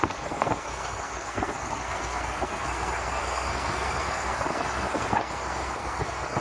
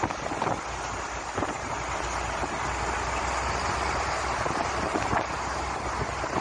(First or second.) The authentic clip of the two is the second